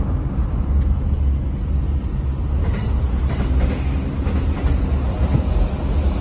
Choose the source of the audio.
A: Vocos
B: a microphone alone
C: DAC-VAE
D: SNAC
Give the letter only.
B